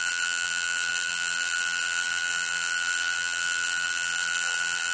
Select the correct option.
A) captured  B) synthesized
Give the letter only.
B